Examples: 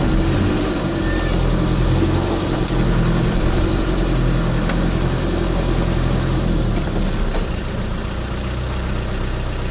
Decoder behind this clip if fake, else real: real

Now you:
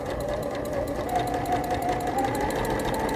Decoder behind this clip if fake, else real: real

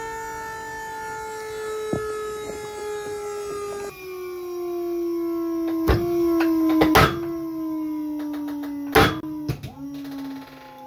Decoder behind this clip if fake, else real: real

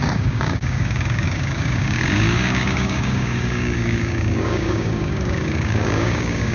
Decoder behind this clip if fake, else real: fake, codec, DAC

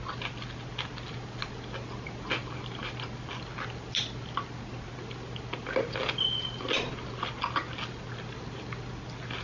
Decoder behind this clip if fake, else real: real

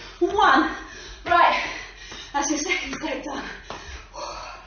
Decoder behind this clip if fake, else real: real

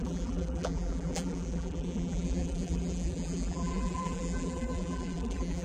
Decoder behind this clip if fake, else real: fake, vocoder, BigVGAN v2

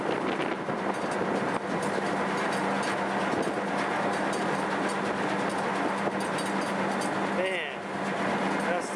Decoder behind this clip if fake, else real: real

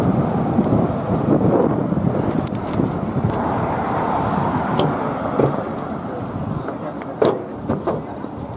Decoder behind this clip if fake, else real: fake, vocoder, BigVGAN v2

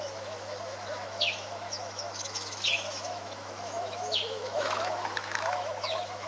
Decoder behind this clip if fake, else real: fake, autoencoder, DAC-VAE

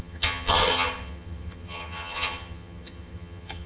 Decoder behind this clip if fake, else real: fake, vocoder, HiFi-GAN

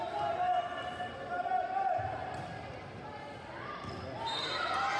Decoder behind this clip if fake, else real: real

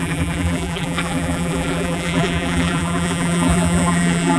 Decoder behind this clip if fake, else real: fake, vocoder, BigVGAN v2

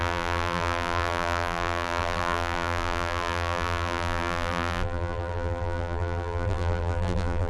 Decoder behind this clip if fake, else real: fake, vocoder, BigVGAN v2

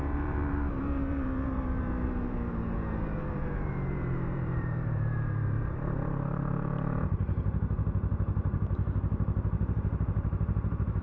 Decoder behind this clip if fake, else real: fake, vocoder, BigVGAN v2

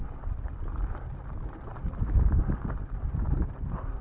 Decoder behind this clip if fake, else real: real